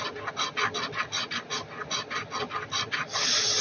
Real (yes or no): yes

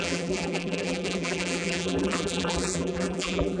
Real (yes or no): no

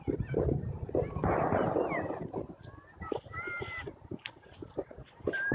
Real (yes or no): yes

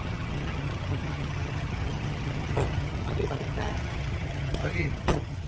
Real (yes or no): no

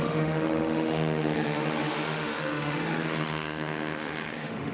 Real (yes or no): no